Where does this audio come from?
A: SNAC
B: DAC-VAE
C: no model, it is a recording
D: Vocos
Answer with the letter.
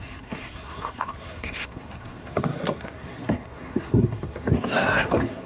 A